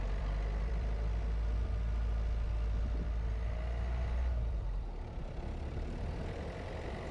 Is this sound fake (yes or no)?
yes